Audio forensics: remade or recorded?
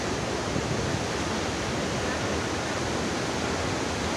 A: recorded